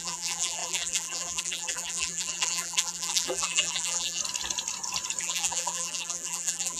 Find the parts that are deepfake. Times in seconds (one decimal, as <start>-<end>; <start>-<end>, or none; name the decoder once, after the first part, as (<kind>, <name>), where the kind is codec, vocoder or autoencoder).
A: 0.0-4.2 (vocoder, BigVGAN v2); 5.2-6.8